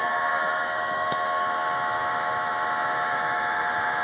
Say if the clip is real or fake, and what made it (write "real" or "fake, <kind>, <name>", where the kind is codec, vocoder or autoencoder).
fake, autoencoder, DAC-VAE